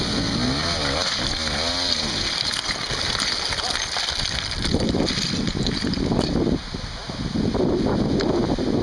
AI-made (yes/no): no